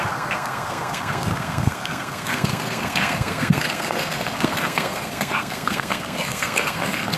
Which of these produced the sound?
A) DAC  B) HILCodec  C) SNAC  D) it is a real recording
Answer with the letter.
C